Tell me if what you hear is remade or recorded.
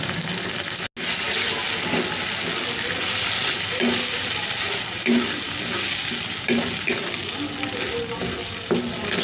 recorded